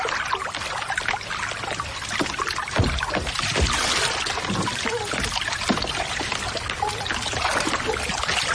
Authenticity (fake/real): real